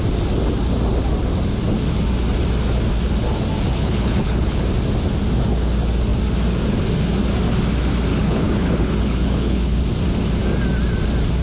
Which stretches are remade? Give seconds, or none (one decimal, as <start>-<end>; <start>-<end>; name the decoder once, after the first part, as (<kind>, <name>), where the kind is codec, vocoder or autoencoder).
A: 3.7-4.6 (codec, HILCodec); 8.1-9.8